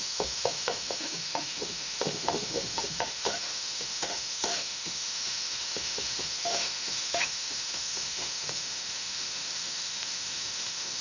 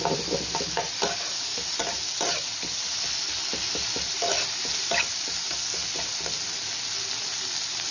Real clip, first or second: second